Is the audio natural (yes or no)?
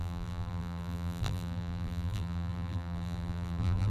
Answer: no